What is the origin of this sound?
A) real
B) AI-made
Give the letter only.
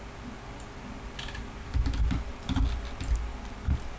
A